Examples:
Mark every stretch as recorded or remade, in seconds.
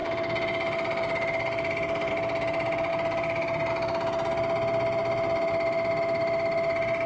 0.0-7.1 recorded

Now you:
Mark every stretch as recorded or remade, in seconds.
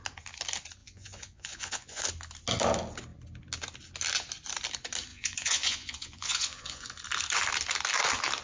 0.0-0.8 recorded; 0.8-2.0 remade; 2.0-5.1 recorded; 5.1-6.9 remade; 6.9-8.4 recorded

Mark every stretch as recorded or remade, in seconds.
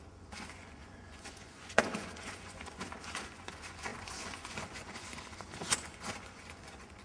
0.0-7.0 remade